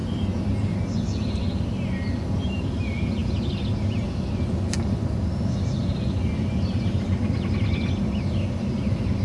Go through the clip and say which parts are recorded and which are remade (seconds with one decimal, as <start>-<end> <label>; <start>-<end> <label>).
0.0-9.2 recorded